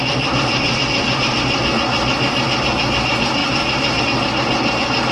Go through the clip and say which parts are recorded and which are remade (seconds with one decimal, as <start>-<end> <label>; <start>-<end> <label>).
0.0-5.1 recorded